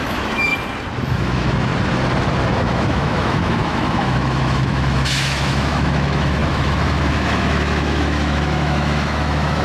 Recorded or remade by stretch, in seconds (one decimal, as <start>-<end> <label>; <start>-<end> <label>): 0.0-0.5 remade; 0.5-1.1 recorded; 1.1-1.7 remade; 1.7-2.5 recorded; 2.5-9.6 remade